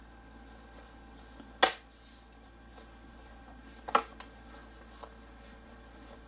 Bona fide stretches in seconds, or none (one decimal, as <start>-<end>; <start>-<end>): 0.0-6.3